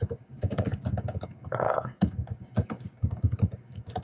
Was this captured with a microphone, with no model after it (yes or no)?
no